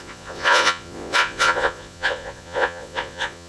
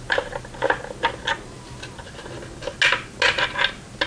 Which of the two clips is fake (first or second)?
first